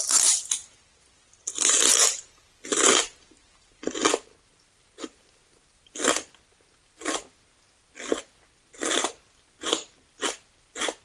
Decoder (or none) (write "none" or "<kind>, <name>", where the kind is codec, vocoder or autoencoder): none